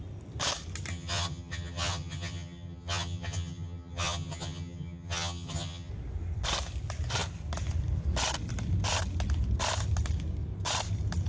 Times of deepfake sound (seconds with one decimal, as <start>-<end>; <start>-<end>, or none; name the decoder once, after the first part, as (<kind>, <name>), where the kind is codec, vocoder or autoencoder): 0.9-5.9 (vocoder, HiFi-GAN)